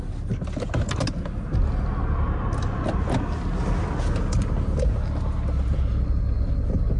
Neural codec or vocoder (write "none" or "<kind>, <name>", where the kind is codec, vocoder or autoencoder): none